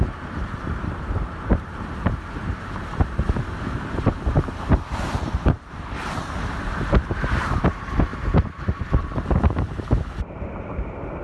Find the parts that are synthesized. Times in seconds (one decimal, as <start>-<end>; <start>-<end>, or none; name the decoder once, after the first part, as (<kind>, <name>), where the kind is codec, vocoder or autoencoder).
0.0-11.2 (vocoder, BigVGAN v2)